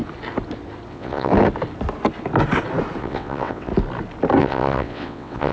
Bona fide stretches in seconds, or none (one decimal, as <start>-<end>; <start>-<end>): 0.0-0.9; 1.3-3.0; 3.7-4.4